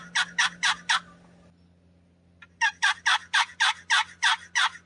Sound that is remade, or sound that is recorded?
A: recorded